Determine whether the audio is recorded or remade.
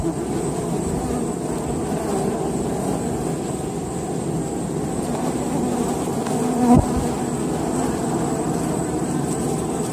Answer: recorded